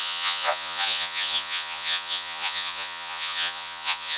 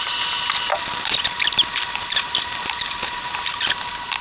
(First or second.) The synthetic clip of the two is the first